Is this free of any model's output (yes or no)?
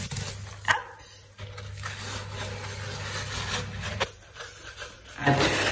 yes